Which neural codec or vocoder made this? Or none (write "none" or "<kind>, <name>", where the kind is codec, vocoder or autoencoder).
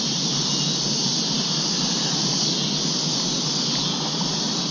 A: none